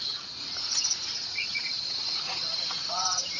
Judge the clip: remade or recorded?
remade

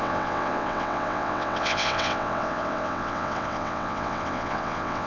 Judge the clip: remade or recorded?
remade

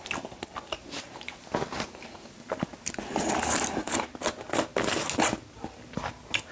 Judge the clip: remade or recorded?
recorded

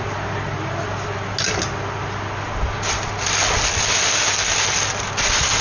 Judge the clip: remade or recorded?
recorded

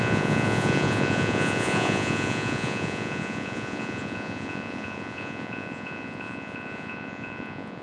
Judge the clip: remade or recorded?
remade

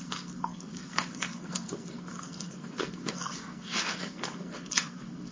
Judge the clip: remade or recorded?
remade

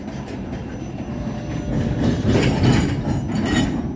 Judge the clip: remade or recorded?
recorded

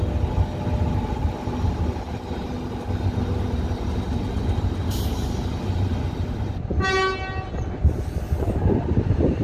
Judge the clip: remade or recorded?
recorded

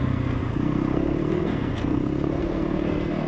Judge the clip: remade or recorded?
remade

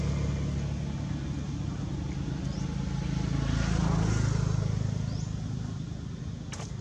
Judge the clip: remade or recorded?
recorded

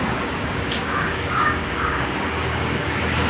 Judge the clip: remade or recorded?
remade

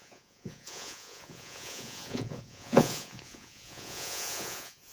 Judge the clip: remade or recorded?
remade